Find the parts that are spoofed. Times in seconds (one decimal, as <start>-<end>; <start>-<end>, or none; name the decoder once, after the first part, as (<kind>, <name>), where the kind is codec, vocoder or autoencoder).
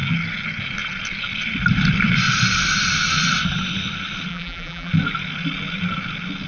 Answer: 4.3-4.9 (vocoder, BigVGAN v2)